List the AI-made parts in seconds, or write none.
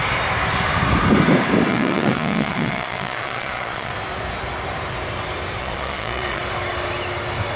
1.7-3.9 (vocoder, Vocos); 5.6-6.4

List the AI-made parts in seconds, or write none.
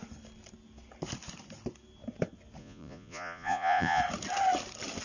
2.6-4.0 (vocoder, Vocos)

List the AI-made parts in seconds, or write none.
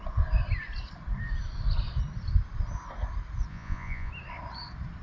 3.5-4.1 (vocoder, Vocos)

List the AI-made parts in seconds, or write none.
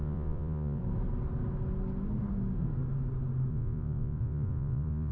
0.0-0.8 (vocoder, Vocos); 3.5-5.1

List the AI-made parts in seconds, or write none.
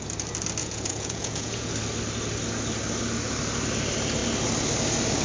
0.6-1.7 (vocoder, Vocos)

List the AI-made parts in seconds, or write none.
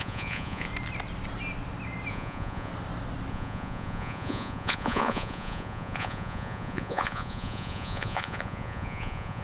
0.0-0.7 (vocoder, Vocos); 2.1-2.7; 3.3-9.4